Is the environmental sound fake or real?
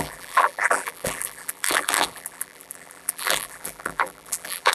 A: fake